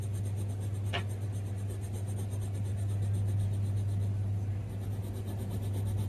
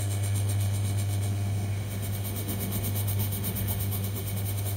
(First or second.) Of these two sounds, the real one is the first